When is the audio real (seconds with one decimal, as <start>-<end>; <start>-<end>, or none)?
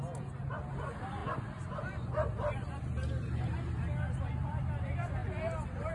0.0-5.9